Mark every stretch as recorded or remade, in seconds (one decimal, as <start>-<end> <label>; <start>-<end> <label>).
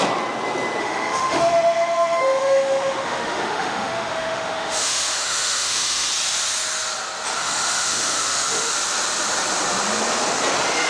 0.0-0.8 recorded; 0.8-6.1 remade; 6.1-7.4 recorded; 7.4-8.7 remade; 8.7-10.9 recorded